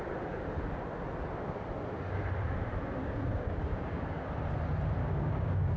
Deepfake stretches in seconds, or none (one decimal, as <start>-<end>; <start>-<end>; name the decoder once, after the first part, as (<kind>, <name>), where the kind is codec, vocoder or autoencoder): 3.0-4.3 (codec, DAC); 5.0-5.8